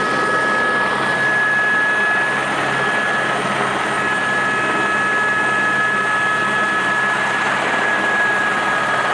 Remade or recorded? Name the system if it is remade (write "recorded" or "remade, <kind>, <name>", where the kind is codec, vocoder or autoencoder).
recorded